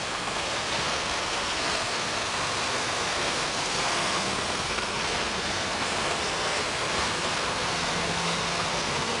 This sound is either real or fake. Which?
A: fake